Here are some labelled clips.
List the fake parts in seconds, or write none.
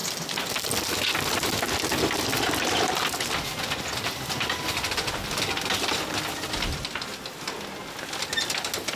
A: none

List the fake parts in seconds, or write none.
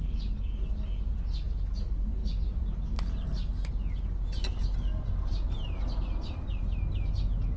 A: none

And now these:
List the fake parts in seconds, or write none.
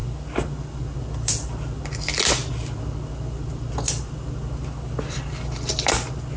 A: none